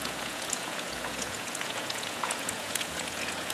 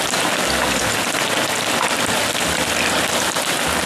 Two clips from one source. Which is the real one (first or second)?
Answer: second